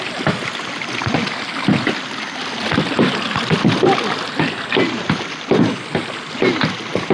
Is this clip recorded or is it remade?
recorded